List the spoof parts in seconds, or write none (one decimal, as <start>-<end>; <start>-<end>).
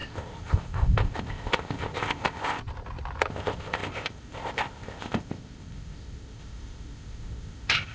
0.0-2.6; 3.3-7.9